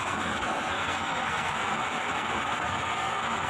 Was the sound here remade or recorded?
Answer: remade